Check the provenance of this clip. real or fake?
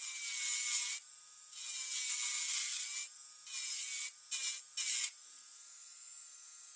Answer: real